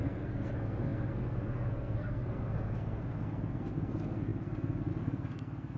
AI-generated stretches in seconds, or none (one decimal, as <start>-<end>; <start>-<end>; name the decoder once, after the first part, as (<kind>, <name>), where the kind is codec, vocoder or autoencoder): 0.0-5.8 (codec, SNAC)